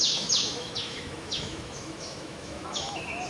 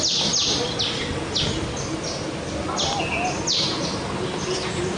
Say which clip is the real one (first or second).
second